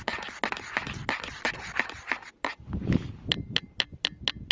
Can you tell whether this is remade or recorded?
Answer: recorded